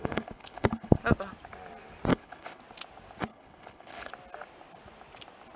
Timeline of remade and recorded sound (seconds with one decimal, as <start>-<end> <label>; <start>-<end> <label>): 0.0-1.0 remade; 1.0-2.1 recorded; 2.1-2.6 remade; 2.6-3.3 recorded; 3.3-4.1 remade; 4.1-5.6 recorded